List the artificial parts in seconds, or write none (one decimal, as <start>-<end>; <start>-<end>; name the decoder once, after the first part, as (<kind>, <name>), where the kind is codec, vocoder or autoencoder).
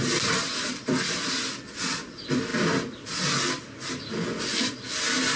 none